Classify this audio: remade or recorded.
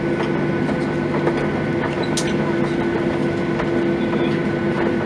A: recorded